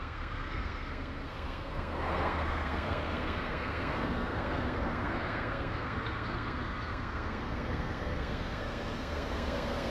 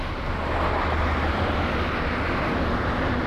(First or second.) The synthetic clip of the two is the first